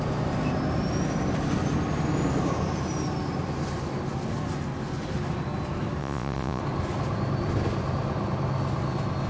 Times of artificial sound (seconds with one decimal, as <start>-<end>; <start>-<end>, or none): 6.0-6.6